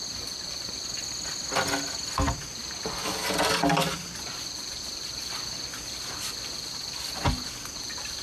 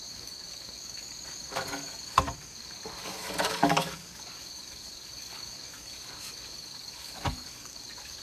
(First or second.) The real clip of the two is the first